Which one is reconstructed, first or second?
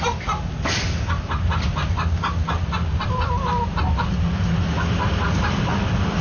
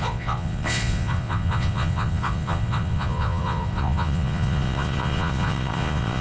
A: second